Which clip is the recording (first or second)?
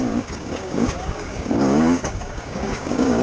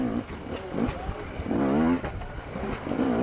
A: second